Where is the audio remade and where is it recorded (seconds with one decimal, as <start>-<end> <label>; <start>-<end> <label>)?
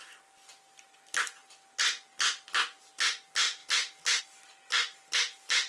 0.0-5.7 recorded